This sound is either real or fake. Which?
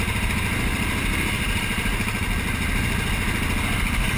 real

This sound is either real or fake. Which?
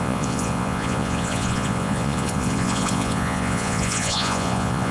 fake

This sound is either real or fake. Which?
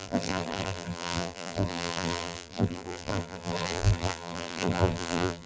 fake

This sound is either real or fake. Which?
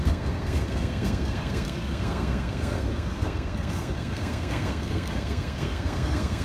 fake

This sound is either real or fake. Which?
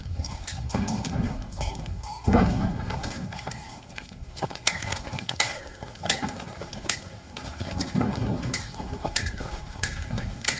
fake